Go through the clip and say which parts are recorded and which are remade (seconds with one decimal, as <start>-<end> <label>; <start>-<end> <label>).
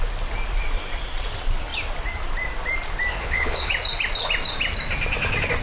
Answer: 0.0-3.1 recorded; 3.1-3.7 remade; 3.7-5.6 recorded